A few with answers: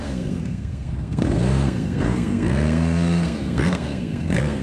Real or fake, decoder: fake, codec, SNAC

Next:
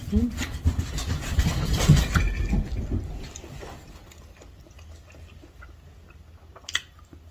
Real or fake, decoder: real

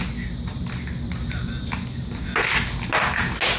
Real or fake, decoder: real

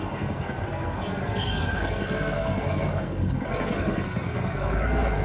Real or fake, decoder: fake, codec, SNAC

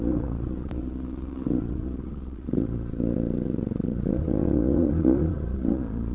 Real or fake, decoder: fake, vocoder, Vocos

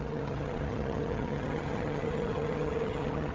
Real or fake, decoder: fake, vocoder, HiFi-GAN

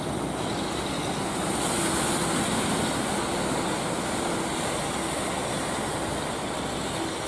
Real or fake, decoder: real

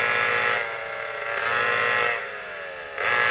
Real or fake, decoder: real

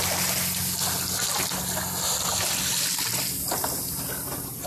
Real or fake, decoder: real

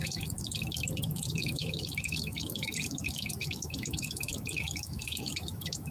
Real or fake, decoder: fake, autoencoder, DAC-VAE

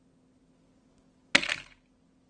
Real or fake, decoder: real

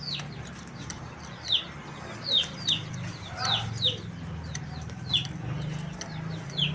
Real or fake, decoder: real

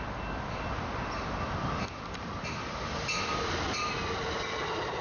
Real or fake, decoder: real